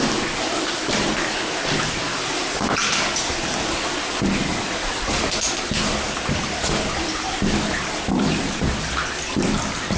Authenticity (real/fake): real